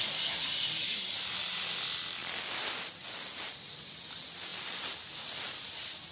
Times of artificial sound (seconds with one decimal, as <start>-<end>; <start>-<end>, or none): none